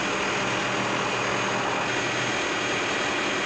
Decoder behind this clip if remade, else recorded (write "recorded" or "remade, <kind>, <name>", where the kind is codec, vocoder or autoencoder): recorded